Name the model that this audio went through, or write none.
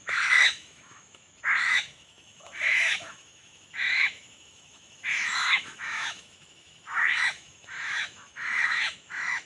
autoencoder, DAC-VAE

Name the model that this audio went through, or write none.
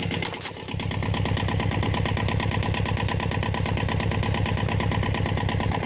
none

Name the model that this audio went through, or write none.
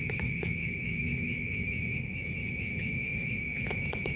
autoencoder, DAC-VAE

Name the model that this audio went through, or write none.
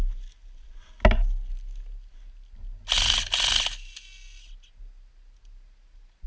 none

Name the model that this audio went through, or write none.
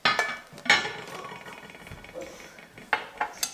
none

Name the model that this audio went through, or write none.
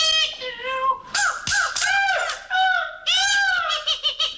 none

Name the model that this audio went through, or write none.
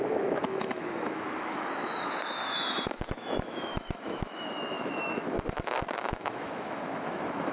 autoencoder, DAC-VAE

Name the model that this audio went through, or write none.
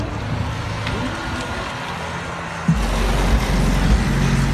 none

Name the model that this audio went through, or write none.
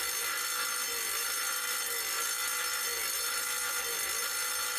none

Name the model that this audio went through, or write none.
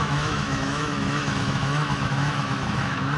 autoencoder, DAC-VAE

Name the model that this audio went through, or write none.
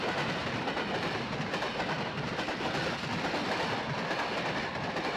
none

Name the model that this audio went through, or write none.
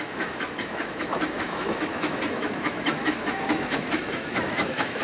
autoencoder, DAC-VAE